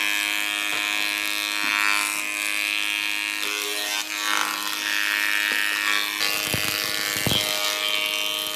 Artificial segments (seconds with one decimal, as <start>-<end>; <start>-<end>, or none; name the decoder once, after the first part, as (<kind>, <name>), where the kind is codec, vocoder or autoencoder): none